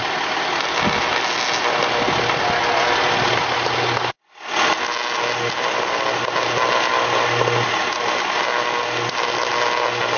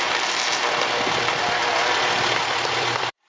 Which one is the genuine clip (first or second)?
first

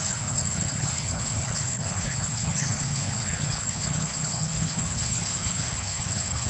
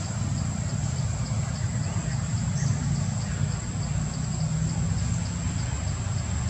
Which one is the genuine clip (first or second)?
second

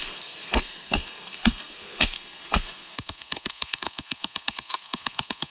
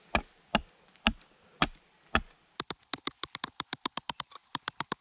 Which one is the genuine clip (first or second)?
second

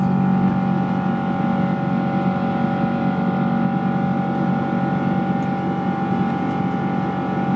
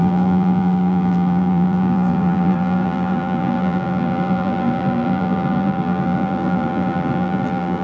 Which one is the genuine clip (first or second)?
first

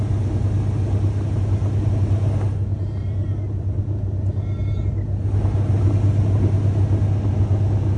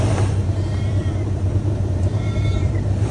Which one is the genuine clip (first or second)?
first